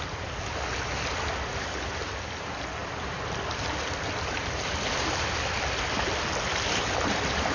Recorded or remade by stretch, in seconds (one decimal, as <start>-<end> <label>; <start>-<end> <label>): 0.0-7.5 recorded